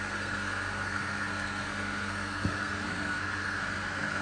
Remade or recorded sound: remade